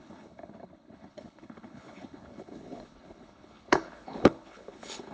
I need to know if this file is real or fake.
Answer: fake